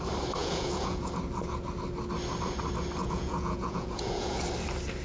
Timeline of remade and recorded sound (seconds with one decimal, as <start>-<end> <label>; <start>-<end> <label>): 0.0-0.4 recorded; 0.4-1.1 remade; 1.1-3.0 recorded; 3.0-4.4 remade; 4.4-5.0 recorded